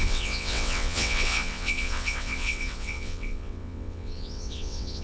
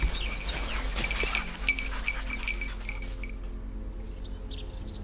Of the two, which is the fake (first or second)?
first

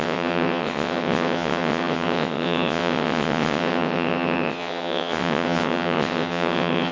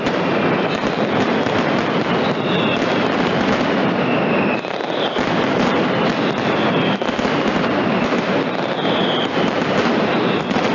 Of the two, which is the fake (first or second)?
first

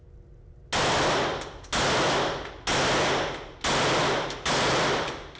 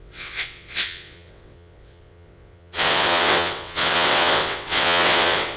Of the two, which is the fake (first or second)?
second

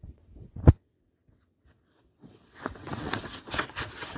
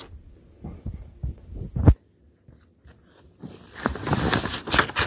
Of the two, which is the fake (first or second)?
first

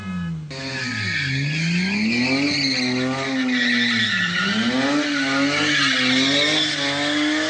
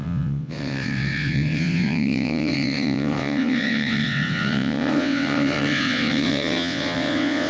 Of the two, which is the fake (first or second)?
second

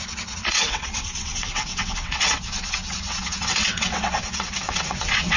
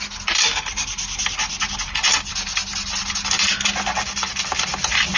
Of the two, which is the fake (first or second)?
first